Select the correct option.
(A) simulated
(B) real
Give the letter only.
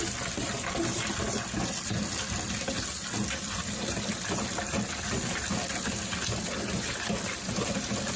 B